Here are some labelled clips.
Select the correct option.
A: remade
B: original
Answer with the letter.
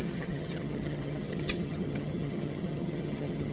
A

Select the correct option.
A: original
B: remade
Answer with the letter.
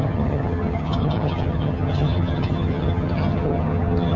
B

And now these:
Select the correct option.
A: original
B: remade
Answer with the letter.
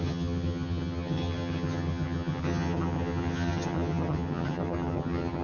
B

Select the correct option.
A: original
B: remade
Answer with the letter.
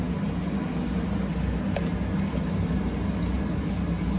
A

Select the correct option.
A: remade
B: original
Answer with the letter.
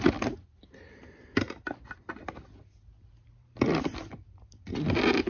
B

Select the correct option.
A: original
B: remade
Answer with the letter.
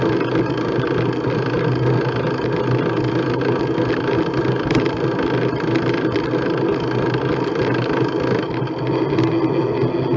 A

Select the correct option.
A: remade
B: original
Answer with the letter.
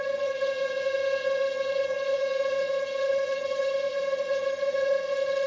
A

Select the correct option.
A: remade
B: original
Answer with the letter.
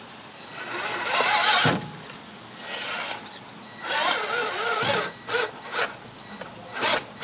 B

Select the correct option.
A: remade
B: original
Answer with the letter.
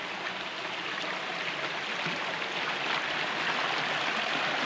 B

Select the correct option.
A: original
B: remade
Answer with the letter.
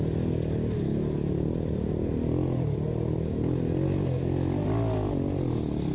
A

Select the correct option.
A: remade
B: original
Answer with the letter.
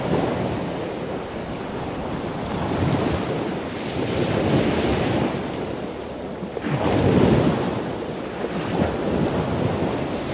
B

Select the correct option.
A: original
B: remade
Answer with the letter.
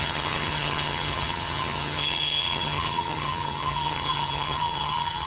B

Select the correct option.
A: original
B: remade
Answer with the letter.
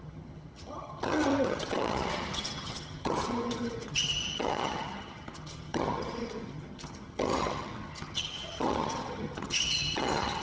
B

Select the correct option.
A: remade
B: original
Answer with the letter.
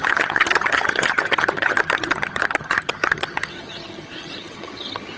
A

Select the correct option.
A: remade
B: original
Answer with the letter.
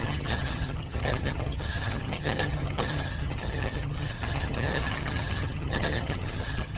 A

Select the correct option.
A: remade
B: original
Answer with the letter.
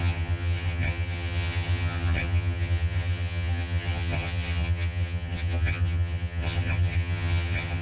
A